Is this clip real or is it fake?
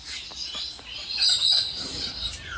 real